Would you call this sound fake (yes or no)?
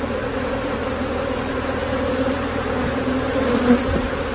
no